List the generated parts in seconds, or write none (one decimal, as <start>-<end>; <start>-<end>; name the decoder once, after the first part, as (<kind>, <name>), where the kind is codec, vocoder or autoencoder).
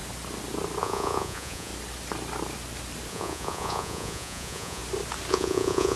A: 0.8-1.7 (vocoder, Vocos); 3.1-4.8; 5.3-6.0